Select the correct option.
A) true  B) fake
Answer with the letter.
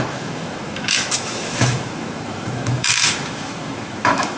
B